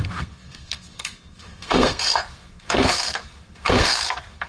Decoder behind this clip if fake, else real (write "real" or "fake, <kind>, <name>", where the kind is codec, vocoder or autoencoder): fake, codec, SNAC